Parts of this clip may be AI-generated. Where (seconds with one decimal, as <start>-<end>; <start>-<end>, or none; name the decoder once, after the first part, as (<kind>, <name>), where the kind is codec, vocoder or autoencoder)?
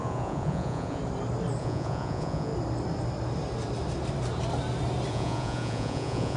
0.0-1.0 (vocoder, Vocos); 1.6-2.5; 5.1-6.4